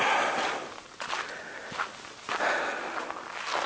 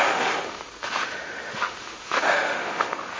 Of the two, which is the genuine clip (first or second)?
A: first